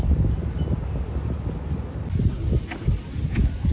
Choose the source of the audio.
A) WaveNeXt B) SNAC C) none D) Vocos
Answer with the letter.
C